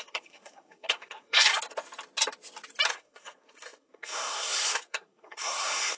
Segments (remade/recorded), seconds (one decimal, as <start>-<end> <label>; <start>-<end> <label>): 0.0-1.5 remade; 1.5-2.9 recorded; 2.9-6.0 remade